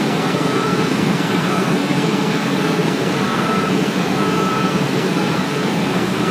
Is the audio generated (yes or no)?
yes